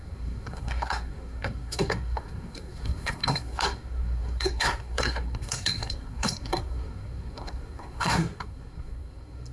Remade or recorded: remade